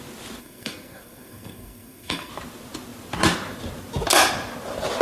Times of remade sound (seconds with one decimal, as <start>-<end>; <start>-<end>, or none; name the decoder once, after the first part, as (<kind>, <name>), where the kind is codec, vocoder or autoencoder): 0.4-2.3 (codec, SNAC)